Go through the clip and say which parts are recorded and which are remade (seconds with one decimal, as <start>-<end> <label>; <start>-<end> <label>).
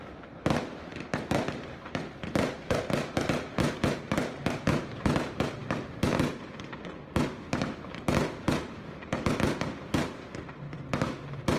0.0-0.9 recorded; 0.9-4.0 remade; 4.0-5.6 recorded; 5.6-6.3 remade; 6.3-11.6 recorded